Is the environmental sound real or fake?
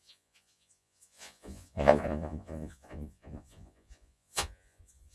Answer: fake